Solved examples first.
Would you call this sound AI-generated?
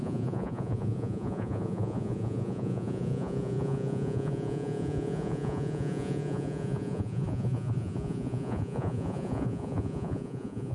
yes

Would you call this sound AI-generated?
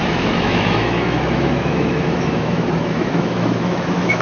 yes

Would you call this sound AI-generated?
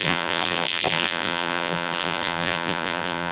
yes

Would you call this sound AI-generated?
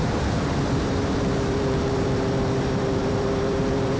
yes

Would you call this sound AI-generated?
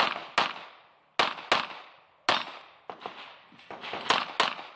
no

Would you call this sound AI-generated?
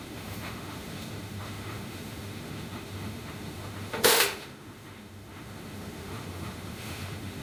yes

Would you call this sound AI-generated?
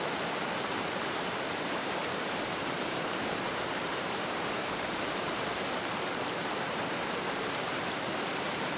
yes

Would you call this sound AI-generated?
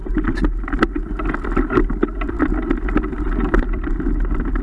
no